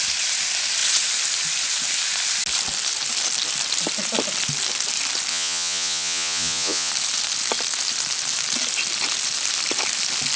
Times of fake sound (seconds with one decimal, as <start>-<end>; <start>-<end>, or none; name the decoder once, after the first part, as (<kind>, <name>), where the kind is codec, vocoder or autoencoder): 5.3-6.9 (vocoder, Vocos)